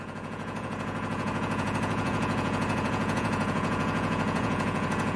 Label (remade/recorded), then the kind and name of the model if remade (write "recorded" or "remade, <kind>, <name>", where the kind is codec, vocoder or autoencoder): remade, vocoder, Vocos